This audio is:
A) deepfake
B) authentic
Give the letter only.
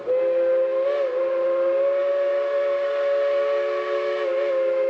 B